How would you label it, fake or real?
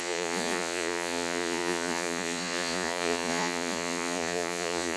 fake